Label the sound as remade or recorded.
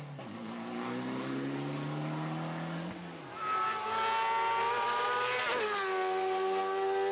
recorded